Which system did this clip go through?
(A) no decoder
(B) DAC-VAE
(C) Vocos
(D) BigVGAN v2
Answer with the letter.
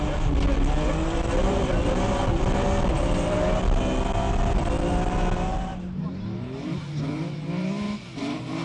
A